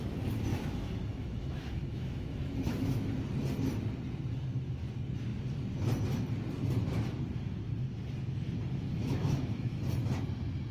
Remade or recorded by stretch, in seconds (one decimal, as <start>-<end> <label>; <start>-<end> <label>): 0.0-0.5 recorded; 0.5-3.1 remade; 3.1-9.0 recorded; 9.0-9.8 remade; 9.8-10.7 recorded

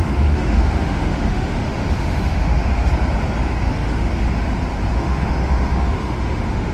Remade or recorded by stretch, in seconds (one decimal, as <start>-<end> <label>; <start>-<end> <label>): 0.0-2.9 remade; 2.9-3.6 recorded; 3.6-4.1 remade; 4.1-4.9 recorded; 4.9-6.7 remade

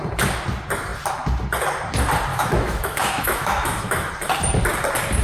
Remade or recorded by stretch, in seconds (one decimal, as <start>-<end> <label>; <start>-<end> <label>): 0.0-2.3 recorded; 2.3-4.1 remade; 4.1-5.2 recorded

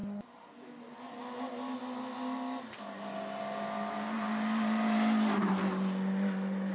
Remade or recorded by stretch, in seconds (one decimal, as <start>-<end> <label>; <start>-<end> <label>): 0.0-6.7 recorded

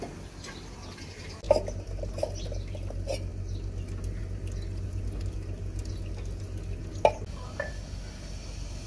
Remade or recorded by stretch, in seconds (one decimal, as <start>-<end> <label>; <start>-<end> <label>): 0.0-8.9 recorded

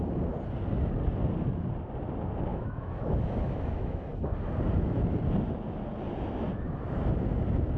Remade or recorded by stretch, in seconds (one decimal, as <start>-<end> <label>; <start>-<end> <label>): 0.0-2.5 recorded; 2.5-4.0 remade; 4.0-7.8 recorded